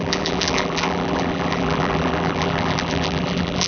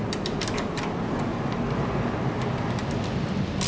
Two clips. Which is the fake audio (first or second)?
first